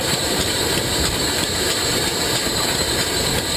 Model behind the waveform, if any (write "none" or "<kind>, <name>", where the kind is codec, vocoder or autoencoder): vocoder, BigVGAN v2